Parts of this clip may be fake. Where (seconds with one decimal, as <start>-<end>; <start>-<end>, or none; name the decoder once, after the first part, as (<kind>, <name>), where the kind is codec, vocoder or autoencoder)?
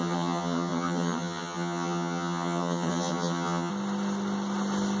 0.0-3.7 (vocoder, HiFi-GAN)